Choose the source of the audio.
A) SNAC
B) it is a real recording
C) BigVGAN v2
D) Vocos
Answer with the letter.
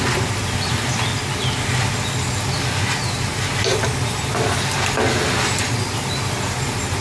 B